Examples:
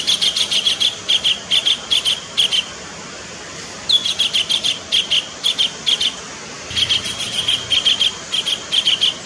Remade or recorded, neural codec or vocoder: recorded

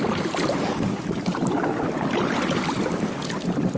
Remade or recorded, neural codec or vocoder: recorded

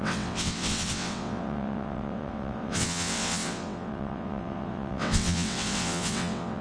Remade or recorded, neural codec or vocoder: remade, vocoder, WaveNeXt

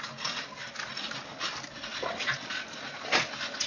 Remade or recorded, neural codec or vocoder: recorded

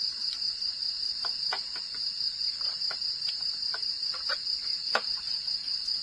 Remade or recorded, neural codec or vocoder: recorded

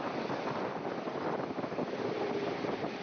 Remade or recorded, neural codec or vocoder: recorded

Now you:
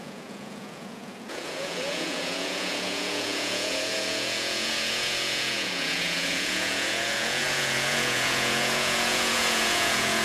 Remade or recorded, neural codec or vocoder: remade, vocoder, Vocos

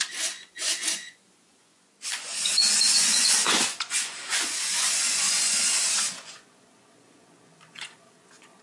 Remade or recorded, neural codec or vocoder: remade, vocoder, Vocos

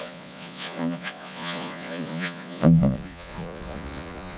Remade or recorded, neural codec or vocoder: remade, vocoder, Vocos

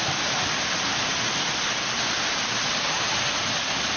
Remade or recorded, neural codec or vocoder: recorded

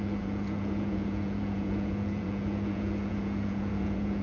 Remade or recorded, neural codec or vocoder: remade, vocoder, Vocos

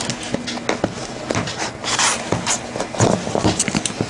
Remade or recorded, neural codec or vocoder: recorded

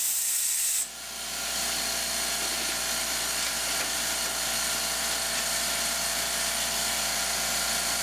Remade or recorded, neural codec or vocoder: recorded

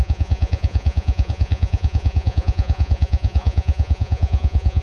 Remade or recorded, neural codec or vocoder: remade, vocoder, Vocos